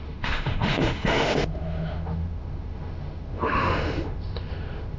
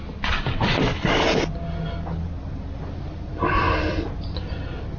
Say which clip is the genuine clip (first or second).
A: second